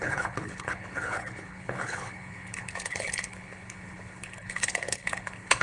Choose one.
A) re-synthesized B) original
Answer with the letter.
A